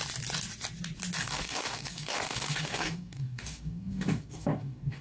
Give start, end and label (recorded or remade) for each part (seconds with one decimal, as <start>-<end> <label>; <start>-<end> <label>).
0.0-1.2 recorded; 1.2-5.0 remade